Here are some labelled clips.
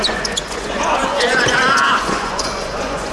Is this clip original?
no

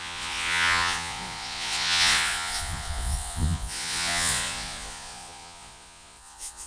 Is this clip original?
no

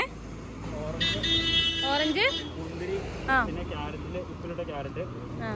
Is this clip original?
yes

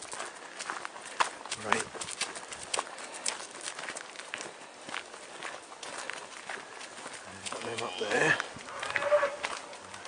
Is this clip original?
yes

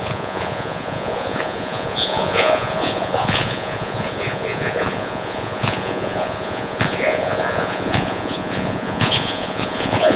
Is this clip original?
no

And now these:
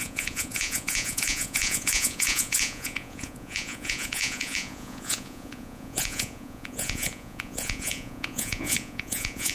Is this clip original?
no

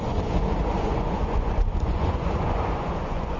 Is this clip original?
no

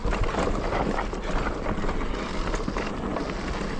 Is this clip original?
yes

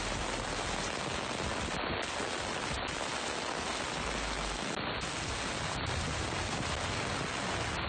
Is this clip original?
yes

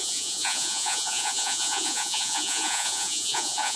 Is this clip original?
no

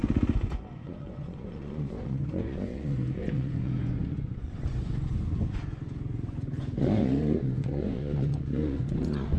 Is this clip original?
no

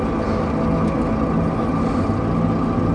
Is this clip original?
yes